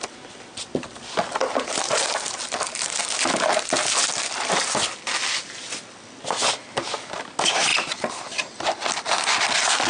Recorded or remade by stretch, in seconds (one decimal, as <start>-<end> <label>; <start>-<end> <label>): 0.0-9.9 recorded